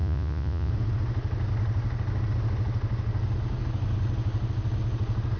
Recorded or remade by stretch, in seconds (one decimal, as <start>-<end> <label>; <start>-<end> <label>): 0.0-0.7 remade; 0.7-5.4 recorded